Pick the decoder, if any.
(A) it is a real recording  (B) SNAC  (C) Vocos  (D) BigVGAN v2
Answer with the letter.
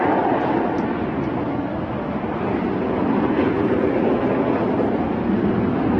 A